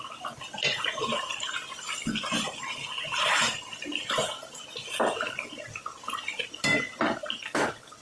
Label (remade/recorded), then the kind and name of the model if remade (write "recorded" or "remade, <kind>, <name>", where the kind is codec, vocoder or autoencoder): recorded